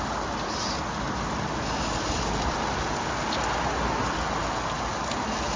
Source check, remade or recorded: recorded